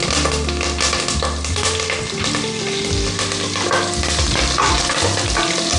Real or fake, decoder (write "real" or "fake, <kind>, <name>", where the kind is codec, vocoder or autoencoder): real